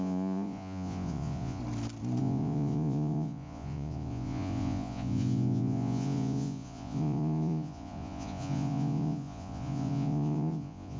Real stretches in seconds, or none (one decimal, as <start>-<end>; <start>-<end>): 1.6-2.2